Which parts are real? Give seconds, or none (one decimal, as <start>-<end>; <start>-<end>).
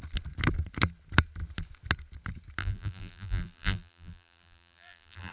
0.0-2.6